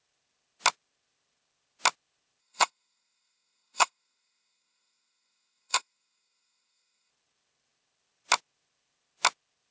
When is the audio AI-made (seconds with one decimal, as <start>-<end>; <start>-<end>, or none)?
2.4-7.1

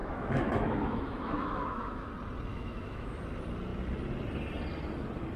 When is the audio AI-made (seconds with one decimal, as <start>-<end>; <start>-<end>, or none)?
0.0-2.1; 2.5-3.2